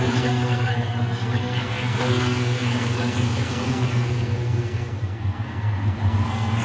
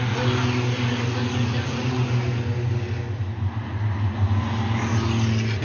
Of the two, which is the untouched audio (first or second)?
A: second